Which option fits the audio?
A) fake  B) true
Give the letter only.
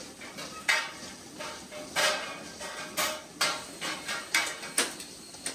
B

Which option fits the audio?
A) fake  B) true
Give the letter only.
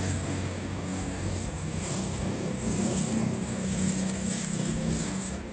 A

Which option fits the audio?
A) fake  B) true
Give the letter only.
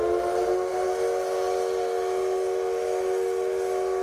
B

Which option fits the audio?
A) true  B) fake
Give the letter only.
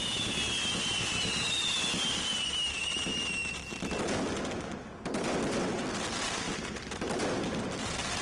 A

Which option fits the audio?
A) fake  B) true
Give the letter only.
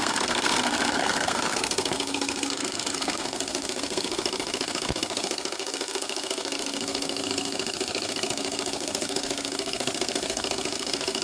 A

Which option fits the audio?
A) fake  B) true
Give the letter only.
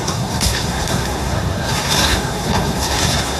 A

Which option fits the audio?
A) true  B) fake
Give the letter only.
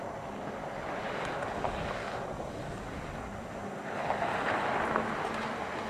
A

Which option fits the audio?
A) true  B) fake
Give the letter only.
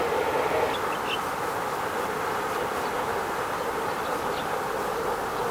A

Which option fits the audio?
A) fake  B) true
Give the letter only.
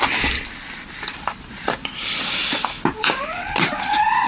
A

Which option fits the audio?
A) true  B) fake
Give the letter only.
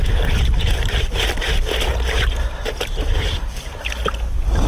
A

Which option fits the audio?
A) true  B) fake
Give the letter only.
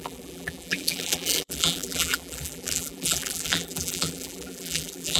B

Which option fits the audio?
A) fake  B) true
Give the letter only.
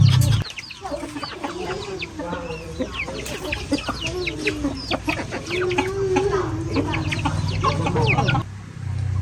B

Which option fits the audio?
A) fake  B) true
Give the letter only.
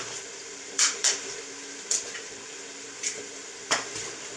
A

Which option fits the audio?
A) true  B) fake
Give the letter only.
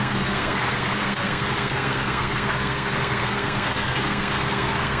B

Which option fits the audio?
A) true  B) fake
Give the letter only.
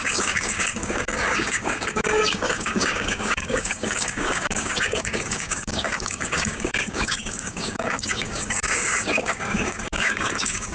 B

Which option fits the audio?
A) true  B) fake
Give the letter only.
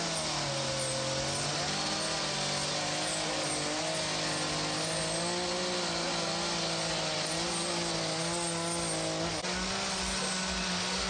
A